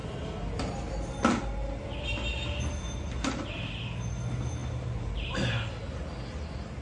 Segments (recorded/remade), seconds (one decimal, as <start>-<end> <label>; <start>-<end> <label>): 0.0-6.8 recorded